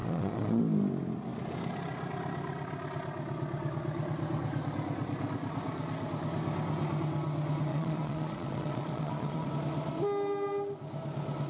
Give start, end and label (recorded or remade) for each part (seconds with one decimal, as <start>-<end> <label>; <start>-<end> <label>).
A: 0.0-0.6 remade; 0.6-7.7 recorded; 7.7-9.5 remade; 9.5-11.5 recorded